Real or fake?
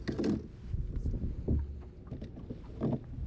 real